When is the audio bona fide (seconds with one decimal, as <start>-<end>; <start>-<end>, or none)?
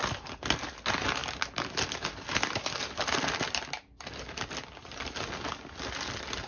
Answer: 0.0-6.5